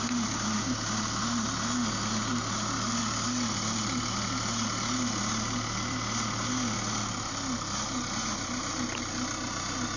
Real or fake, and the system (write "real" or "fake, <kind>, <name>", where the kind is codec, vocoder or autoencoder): real